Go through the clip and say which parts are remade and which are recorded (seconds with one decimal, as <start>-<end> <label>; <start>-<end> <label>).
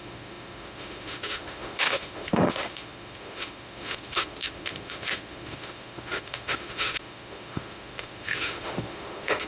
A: 0.0-9.5 remade